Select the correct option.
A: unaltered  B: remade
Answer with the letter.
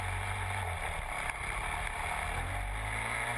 A